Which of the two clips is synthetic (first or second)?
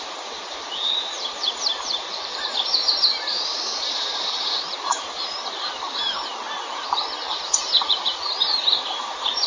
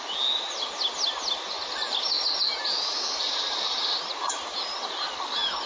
first